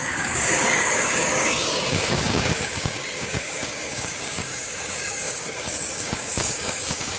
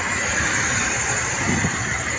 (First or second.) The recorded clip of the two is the second